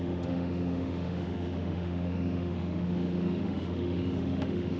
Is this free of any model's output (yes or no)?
no